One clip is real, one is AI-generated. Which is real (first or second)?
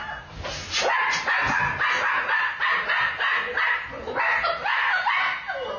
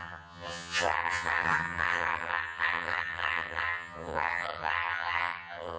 first